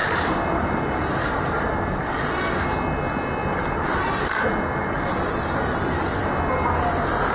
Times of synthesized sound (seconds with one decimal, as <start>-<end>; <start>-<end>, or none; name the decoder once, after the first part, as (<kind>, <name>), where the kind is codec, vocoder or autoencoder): 0.0-2.6 (vocoder, BigVGAN v2); 3.4-4.1; 4.8-6.3